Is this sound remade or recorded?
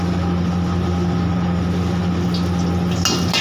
recorded